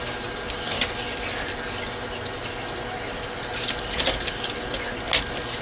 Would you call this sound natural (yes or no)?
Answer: yes